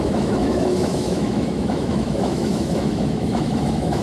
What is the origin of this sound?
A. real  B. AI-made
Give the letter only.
B